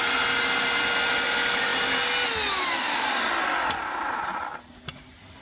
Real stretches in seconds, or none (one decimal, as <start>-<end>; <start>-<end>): 0.0-5.4